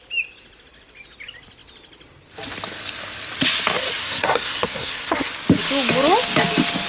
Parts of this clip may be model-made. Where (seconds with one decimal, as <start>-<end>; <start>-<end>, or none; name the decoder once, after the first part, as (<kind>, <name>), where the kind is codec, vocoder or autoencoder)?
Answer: 4.0-5.3 (codec, SNAC)